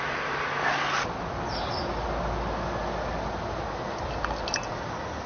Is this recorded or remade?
recorded